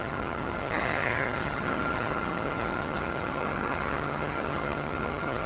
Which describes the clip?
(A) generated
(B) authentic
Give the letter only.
A